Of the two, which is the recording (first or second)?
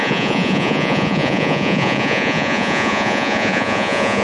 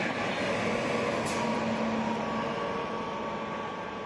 second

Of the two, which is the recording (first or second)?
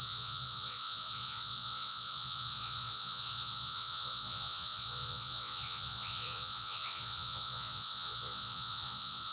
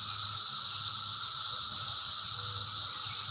second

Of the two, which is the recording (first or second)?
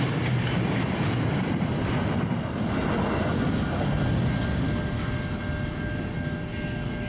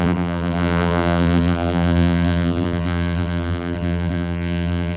first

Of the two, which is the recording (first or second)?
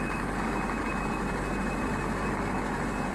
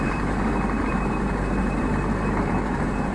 first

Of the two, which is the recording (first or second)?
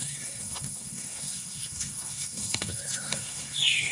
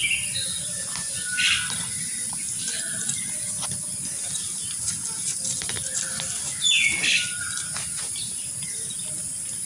second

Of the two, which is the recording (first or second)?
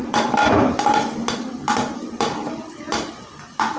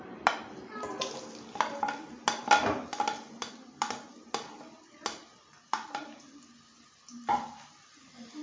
second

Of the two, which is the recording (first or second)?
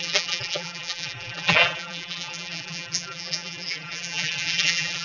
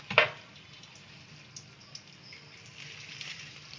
second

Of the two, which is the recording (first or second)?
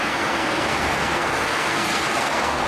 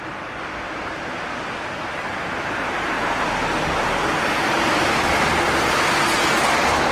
second